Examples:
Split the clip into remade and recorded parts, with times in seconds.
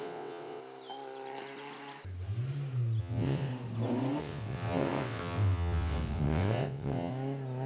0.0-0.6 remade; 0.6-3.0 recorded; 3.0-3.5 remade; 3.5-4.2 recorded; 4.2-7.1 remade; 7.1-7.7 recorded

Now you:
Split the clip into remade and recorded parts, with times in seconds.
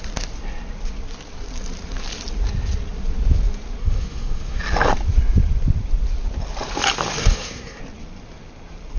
0.0-3.8 recorded; 3.8-4.6 remade; 4.6-7.2 recorded; 7.2-7.8 remade; 7.8-9.0 recorded